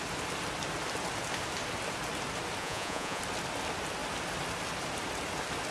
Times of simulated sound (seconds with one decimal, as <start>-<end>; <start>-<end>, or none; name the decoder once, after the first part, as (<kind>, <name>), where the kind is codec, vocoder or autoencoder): 2.6-3.2 (vocoder, Vocos)